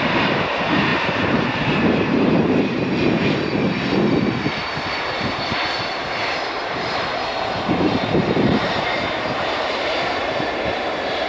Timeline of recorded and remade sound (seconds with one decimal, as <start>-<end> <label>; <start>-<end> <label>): 0.0-11.3 remade